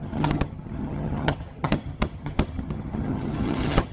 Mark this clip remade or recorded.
remade